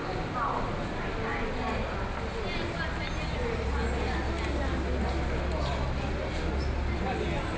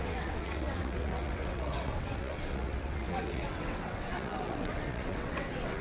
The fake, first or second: second